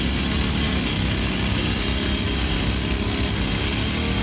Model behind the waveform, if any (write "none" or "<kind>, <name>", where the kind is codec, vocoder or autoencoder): none